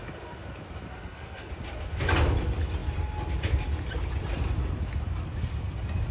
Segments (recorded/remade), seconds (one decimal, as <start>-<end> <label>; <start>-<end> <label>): 0.0-0.9 recorded; 0.9-1.5 remade; 1.5-6.1 recorded

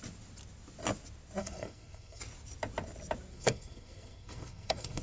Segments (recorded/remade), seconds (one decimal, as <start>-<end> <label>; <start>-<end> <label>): 0.0-1.4 recorded; 1.4-2.2 remade; 2.2-3.3 recorded; 3.3-5.0 remade

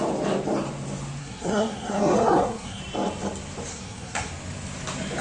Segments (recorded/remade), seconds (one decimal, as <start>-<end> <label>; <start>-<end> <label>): 0.0-1.2 recorded; 1.2-2.8 remade; 2.8-3.7 recorded; 3.7-4.3 remade; 4.3-5.2 recorded

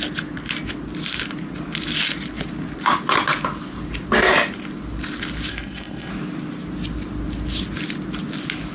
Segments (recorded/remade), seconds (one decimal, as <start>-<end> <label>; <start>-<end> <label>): 0.0-5.5 recorded; 5.5-6.1 remade; 6.1-8.7 recorded

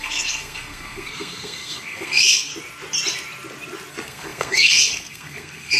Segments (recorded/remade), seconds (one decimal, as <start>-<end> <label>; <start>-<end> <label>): 0.0-2.5 remade; 2.5-3.9 recorded; 3.9-5.8 remade

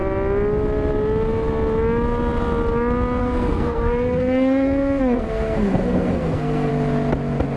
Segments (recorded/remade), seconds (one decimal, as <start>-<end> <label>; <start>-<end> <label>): 0.0-3.2 recorded; 3.2-6.7 remade; 6.7-7.6 recorded